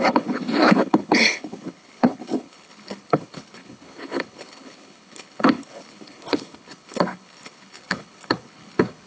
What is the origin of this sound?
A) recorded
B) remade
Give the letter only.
B